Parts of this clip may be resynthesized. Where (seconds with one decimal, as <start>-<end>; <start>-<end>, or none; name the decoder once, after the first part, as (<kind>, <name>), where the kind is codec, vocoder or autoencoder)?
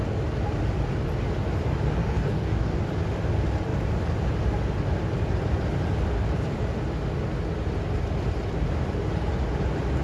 2.0-2.8 (codec, DAC)